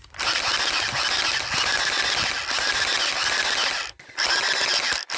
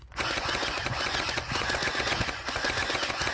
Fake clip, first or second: second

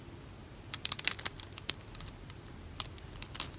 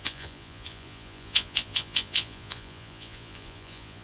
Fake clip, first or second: second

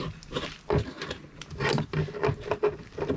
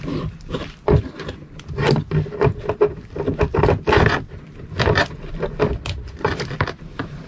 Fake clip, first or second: second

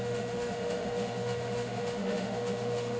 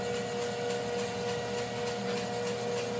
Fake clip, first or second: first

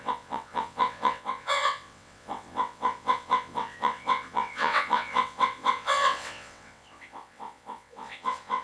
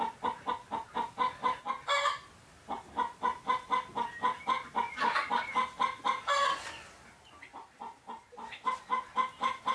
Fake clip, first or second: first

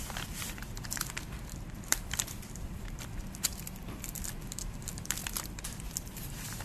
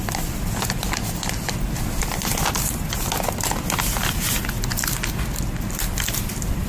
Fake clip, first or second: first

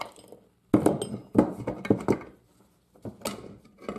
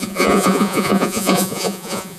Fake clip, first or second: second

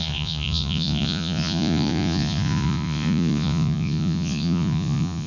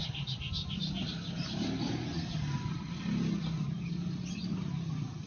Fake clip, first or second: first